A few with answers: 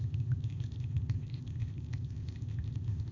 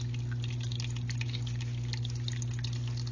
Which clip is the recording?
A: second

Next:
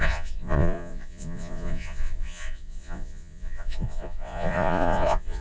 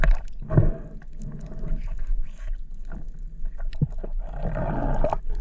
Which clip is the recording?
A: second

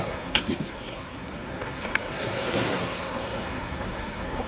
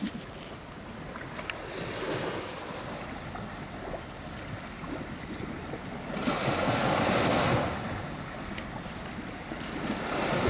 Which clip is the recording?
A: second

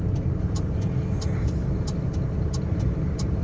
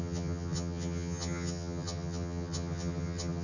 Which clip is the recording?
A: first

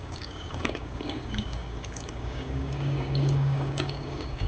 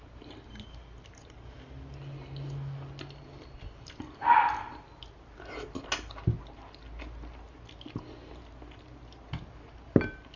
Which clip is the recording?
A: second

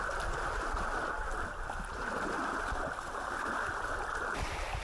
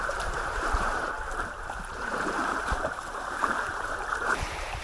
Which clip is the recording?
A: first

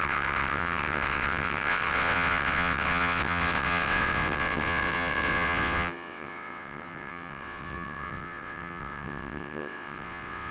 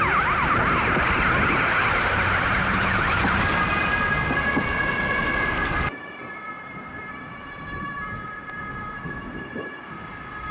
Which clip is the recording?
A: second